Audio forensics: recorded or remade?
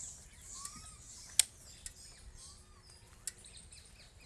recorded